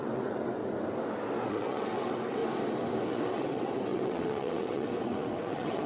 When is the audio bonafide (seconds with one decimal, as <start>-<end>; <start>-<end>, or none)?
0.6-1.5; 2.4-3.1